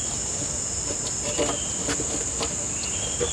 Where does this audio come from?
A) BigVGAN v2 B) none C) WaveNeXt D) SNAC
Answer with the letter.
B